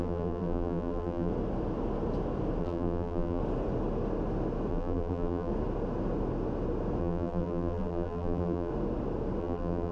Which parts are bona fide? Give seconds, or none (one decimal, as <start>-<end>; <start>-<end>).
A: 1.3-2.6; 3.4-4.7; 5.5-7.0; 8.7-9.4